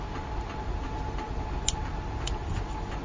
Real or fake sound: real